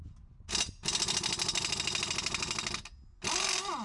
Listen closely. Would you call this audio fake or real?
real